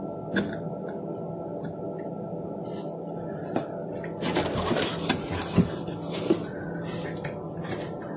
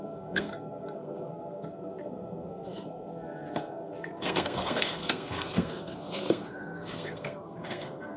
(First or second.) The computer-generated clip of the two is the second